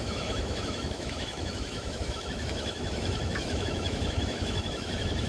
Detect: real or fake fake